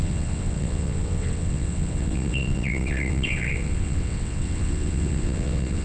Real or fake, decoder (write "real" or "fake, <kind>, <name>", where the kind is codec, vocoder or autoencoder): fake, vocoder, WaveNeXt